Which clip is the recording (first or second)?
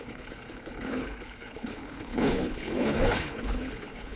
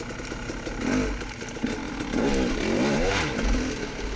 second